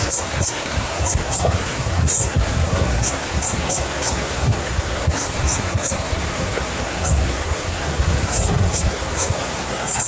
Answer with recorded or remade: remade